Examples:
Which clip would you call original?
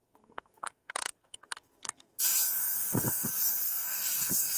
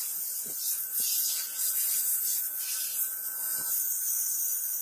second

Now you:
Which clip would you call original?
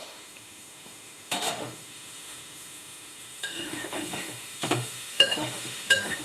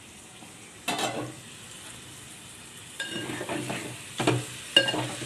second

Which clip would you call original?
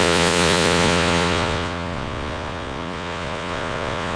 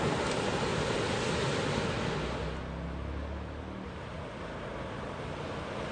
second